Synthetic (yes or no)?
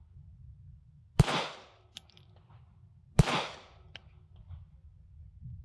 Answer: no